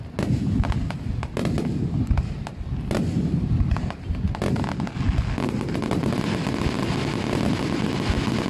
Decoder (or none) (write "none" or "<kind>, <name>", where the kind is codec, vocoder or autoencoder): none